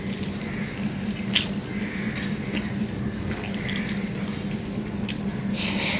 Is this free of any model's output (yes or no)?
yes